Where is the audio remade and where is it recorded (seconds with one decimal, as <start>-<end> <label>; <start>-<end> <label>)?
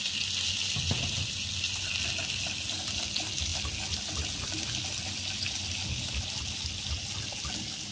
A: 0.0-7.9 recorded